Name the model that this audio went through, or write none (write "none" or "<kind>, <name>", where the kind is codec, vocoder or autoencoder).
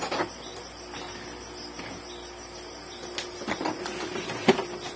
none